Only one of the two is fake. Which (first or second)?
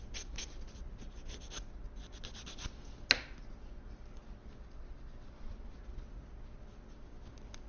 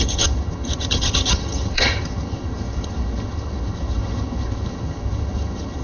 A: second